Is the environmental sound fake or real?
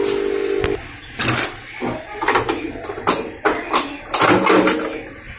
real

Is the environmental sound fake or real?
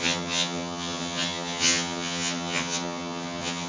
fake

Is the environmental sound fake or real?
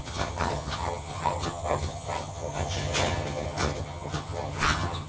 fake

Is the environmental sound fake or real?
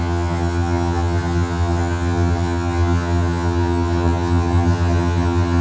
fake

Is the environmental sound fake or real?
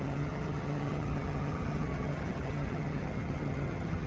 fake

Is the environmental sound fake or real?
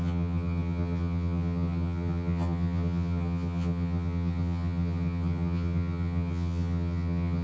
fake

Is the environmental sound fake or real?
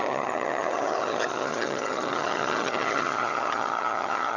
fake